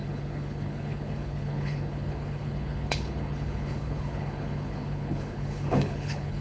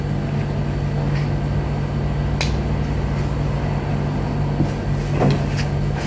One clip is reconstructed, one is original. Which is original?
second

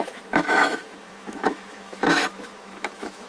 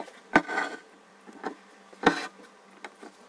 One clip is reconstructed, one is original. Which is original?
second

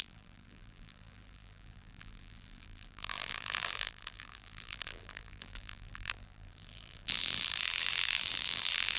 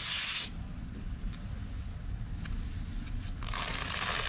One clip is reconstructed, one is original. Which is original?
second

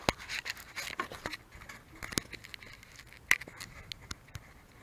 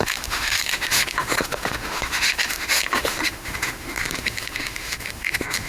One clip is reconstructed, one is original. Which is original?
first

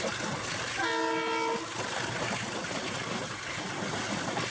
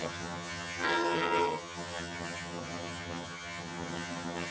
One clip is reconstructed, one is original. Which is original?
first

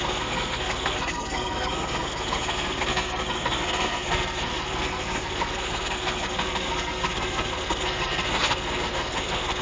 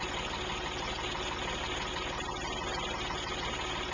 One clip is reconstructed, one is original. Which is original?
second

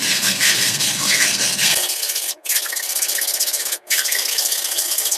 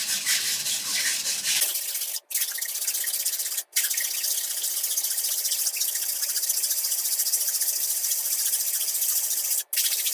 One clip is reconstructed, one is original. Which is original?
second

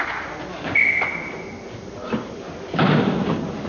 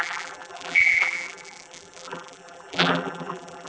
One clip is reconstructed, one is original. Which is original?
first